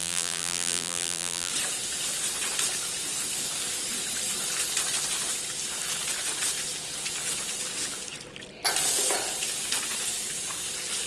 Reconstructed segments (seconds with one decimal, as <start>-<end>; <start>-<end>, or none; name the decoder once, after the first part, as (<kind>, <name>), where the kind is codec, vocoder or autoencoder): 0.0-1.5 (vocoder, BigVGAN v2)